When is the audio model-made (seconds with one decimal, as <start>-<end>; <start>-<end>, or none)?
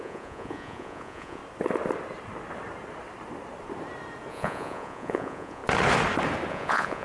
0.0-1.4; 4.3-5.6; 6.5-7.0